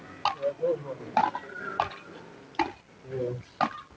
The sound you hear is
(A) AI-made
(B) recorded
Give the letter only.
B